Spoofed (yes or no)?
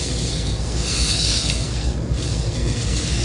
yes